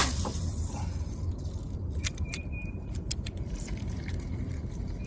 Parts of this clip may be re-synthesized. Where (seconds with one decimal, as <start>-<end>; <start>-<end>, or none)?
2.3-5.1

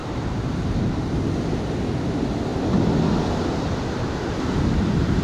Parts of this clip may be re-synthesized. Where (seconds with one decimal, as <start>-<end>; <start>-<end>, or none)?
0.0-1.3